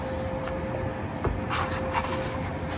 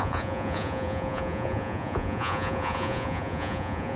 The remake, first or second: second